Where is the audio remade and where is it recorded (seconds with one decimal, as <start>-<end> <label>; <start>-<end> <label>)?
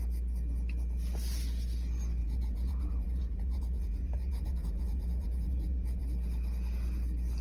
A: 0.0-2.2 recorded; 2.2-6.0 remade; 6.0-7.4 recorded